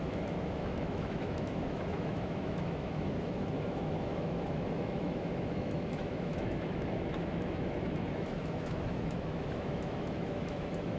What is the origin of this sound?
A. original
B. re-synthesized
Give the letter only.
B